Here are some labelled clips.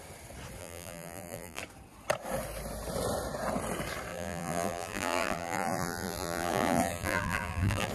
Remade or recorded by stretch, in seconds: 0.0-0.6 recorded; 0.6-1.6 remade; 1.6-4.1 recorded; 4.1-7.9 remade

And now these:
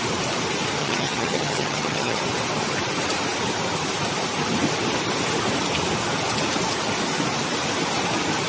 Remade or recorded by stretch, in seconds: 0.0-0.8 recorded; 0.8-2.2 remade; 2.2-8.5 recorded

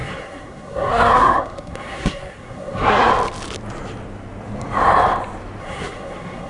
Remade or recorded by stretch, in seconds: 0.0-3.1 remade; 3.1-5.6 recorded; 5.6-6.5 remade

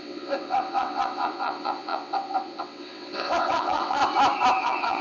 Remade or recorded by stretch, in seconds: 0.0-4.0 remade; 4.0-4.6 recorded; 4.6-5.0 remade

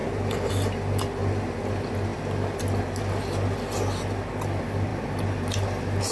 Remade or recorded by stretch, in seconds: 0.0-6.1 recorded

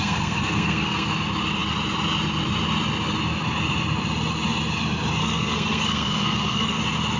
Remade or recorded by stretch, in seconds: 0.0-1.1 remade; 1.1-5.2 recorded; 5.2-6.8 remade; 6.8-7.2 recorded

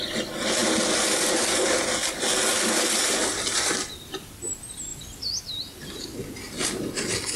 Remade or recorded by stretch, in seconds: 0.0-4.9 recorded; 4.9-5.4 remade; 5.4-7.4 recorded

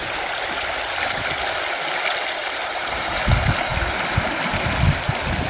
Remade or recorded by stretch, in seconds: 0.0-2.4 recorded; 2.4-3.2 remade; 3.2-5.5 recorded